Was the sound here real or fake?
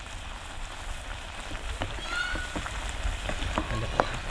real